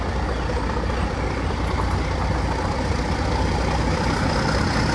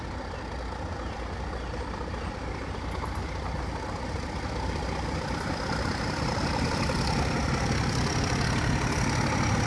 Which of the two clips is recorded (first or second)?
first